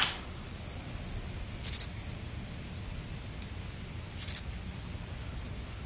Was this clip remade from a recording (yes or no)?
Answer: no